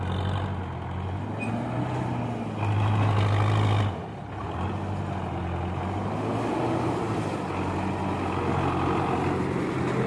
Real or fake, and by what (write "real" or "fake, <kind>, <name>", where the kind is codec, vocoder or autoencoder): real